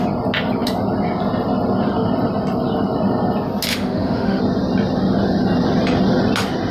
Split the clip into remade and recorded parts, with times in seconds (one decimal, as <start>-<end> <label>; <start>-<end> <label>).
0.0-3.7 recorded; 3.7-4.4 remade; 4.4-6.7 recorded